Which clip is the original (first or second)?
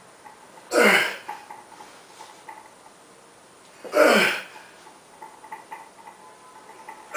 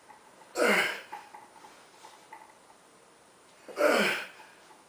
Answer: first